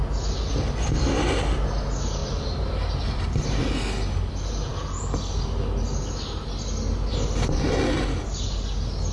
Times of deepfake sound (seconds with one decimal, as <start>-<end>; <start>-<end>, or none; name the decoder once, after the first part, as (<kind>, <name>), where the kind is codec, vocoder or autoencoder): 2.2-3.6 (vocoder, BigVGAN v2)